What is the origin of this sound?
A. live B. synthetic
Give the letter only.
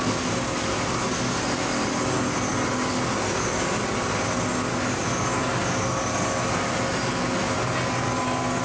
A